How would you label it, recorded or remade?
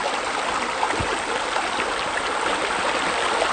recorded